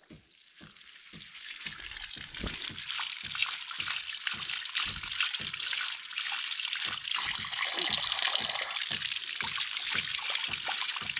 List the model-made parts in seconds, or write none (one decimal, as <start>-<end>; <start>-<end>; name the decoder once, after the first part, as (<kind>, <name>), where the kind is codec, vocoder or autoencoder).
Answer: none